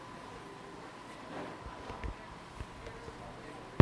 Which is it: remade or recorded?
recorded